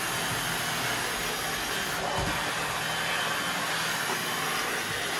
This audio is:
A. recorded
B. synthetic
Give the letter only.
A